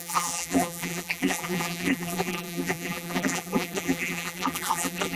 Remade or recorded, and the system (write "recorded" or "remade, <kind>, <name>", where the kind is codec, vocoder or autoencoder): remade, vocoder, BigVGAN v2